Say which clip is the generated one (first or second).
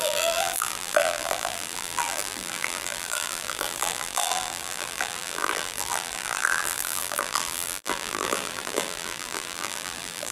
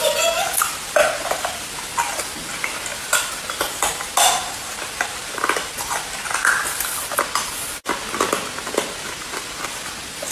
first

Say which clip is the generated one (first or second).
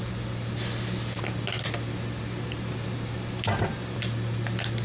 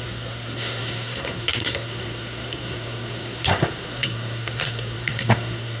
second